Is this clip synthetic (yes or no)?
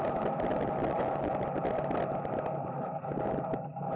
no